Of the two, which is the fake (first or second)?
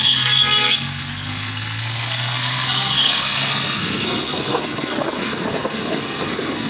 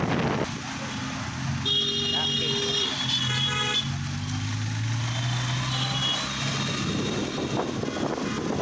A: first